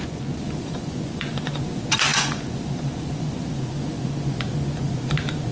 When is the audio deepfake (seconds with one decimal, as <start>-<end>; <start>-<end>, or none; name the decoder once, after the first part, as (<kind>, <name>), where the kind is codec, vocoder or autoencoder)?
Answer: 0.0-5.5 (vocoder, Vocos)